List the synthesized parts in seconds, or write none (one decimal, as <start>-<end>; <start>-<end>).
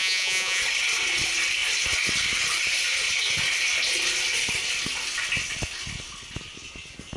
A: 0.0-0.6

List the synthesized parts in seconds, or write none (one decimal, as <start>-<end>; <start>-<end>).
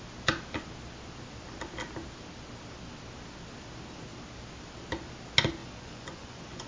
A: 5.6-6.7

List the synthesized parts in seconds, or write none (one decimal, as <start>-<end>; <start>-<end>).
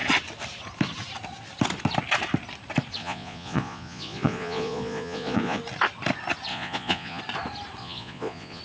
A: 3.0-5.6; 6.5-7.2; 7.8-8.6